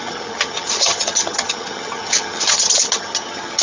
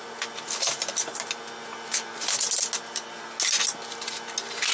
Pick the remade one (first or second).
first